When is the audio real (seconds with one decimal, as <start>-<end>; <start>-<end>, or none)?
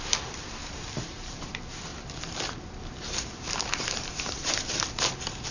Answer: 0.0-0.6; 1.5-1.9